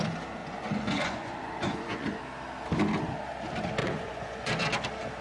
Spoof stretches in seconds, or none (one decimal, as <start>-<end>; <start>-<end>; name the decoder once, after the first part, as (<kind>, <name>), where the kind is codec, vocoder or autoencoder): 0.4-2.2 (vocoder, Vocos); 3.8-4.5